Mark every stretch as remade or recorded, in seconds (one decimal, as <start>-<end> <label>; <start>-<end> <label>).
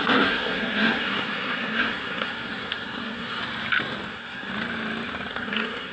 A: 0.0-3.4 remade; 3.4-4.1 recorded; 4.1-4.5 remade; 4.5-5.3 recorded; 5.3-5.9 remade